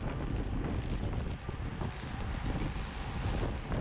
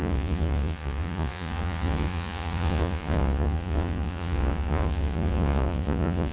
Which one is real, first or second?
first